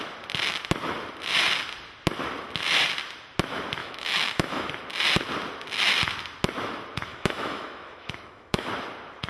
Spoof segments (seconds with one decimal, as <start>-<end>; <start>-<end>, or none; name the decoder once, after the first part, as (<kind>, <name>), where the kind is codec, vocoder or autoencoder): 3.8-4.7 (autoencoder, DAC-VAE); 7.1-8.7